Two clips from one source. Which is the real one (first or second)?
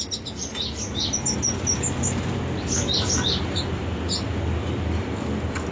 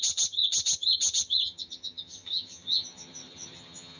first